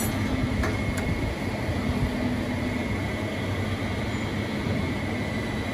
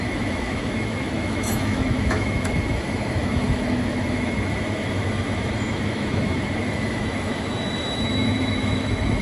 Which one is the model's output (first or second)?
second